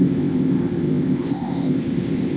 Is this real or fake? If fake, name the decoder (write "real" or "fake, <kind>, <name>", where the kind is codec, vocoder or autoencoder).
fake, codec, ZipCodec